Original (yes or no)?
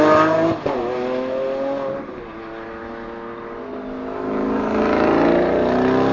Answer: yes